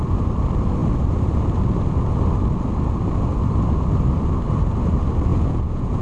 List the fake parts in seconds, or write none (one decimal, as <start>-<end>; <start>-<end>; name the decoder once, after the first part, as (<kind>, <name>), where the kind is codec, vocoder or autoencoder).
5.3-6.0 (vocoder, Vocos)